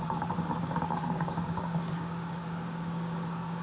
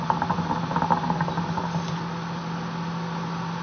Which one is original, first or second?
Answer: second